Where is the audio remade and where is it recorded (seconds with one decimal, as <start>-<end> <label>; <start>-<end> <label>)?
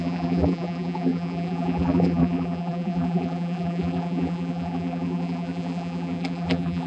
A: 0.0-6.9 remade